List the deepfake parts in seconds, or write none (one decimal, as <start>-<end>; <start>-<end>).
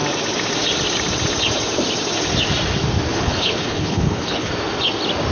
3.1-4.5